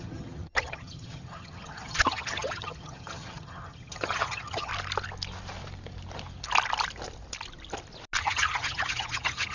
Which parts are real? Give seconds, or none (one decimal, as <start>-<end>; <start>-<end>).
4.7-8.2